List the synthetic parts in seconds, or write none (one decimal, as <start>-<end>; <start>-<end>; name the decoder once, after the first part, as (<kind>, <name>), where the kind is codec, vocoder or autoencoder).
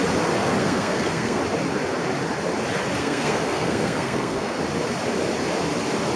0.4-1.4 (codec, SNAC); 3.0-4.6